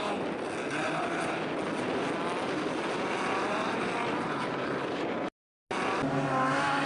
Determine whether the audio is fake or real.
real